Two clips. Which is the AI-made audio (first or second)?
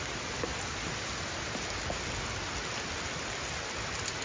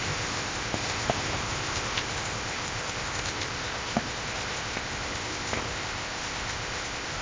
second